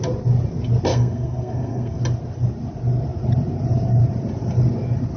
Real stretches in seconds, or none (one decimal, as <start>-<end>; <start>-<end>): 0.0-0.9; 2.0-5.2